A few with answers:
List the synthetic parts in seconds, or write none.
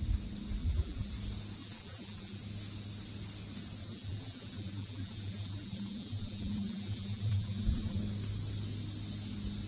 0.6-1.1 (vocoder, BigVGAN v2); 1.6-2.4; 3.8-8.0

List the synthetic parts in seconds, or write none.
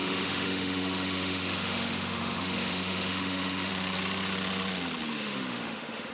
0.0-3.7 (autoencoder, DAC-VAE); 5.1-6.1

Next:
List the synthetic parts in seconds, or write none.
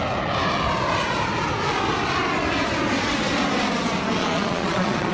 4.2-5.1 (vocoder, Vocos)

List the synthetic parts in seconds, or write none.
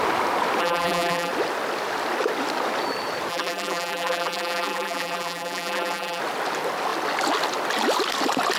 0.6-1.3 (vocoder, BigVGAN v2); 3.3-6.2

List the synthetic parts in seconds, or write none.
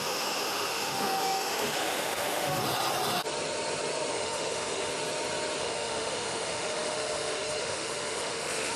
0.0-2.6 (autoencoder, DAC-VAE); 4.1-4.9; 5.6-8.8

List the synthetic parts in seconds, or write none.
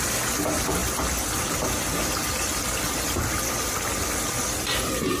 none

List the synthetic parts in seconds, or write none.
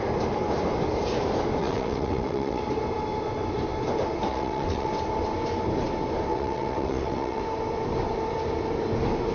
1.6-2.6 (vocoder, WaveNeXt); 4.3-4.9; 6.3-7.4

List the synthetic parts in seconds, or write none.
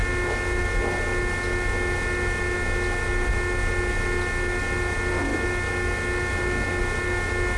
none